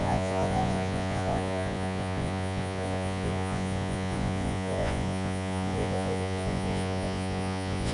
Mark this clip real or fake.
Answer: fake